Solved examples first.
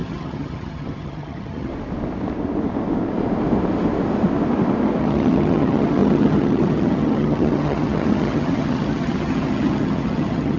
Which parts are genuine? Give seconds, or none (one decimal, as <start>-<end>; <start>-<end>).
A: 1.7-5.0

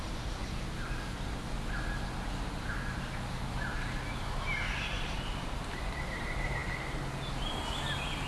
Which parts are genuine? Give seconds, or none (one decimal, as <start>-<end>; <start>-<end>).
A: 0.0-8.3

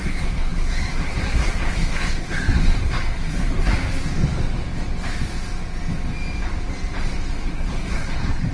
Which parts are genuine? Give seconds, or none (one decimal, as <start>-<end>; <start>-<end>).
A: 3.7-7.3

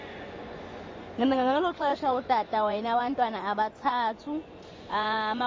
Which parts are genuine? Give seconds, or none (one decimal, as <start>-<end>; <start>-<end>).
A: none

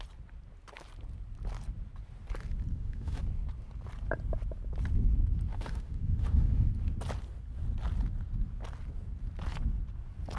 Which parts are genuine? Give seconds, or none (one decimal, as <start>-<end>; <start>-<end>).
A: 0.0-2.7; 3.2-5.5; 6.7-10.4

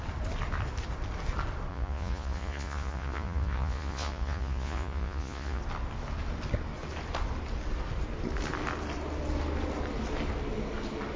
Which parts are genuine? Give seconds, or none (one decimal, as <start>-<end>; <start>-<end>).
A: 0.0-1.7; 5.6-11.2